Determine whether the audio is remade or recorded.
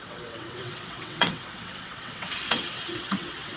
remade